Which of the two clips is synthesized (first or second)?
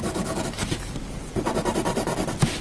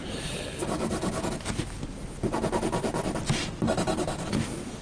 first